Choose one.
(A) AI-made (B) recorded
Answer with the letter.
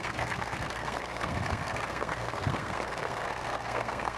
A